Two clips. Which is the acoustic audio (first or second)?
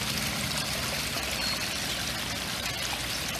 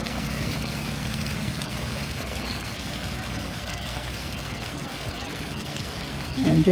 first